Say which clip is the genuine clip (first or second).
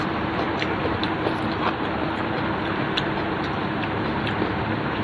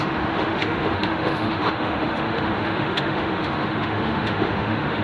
first